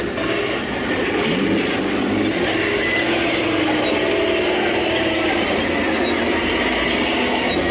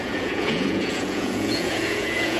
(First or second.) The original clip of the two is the first